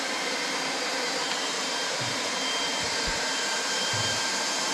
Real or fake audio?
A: fake